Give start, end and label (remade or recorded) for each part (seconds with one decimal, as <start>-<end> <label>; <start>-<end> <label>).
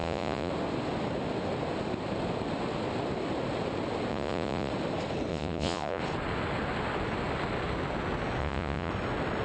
0.0-0.5 remade; 0.5-4.1 recorded; 4.1-4.7 remade; 4.7-5.3 recorded; 5.3-6.0 remade; 6.0-8.4 recorded; 8.4-8.9 remade; 8.9-9.4 recorded